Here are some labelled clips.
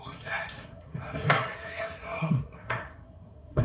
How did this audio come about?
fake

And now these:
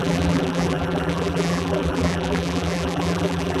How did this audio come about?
fake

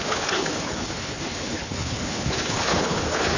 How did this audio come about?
fake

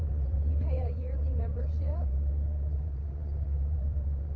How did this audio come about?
fake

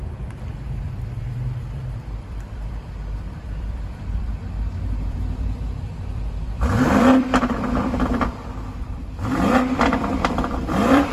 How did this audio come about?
fake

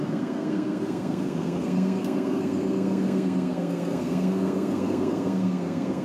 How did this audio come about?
fake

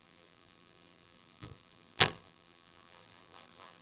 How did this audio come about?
fake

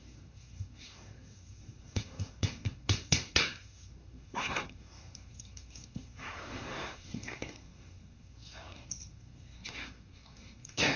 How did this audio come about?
fake